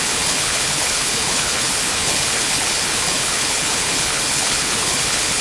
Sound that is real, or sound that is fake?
fake